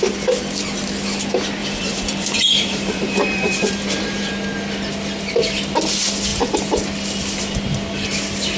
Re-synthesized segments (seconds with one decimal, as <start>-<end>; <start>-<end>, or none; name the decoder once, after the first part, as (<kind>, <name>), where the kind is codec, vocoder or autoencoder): 1.6-4.3 (vocoder, BigVGAN v2)